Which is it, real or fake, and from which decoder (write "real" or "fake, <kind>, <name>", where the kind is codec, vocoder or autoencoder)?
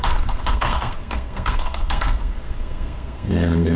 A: fake, codec, SNAC